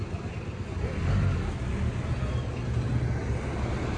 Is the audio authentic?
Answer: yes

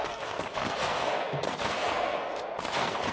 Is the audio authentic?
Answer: no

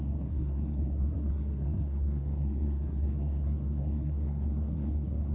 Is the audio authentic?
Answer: no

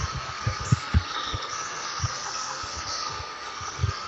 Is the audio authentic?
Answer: no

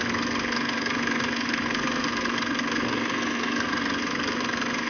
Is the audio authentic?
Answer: no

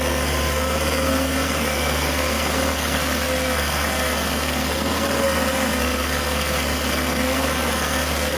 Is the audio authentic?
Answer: no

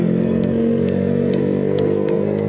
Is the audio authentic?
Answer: no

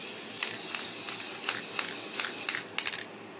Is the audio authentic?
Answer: yes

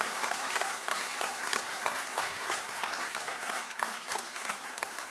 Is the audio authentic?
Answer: no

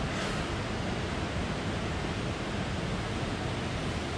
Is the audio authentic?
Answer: yes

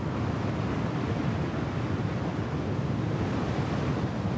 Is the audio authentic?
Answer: yes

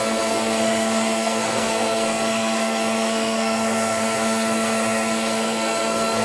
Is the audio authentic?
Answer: no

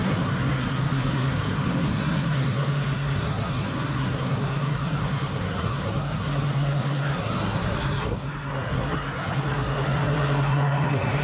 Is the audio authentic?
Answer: no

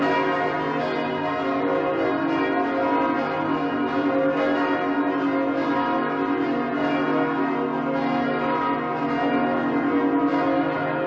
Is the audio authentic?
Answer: yes